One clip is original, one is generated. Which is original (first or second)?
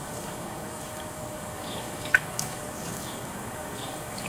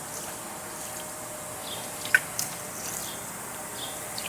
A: second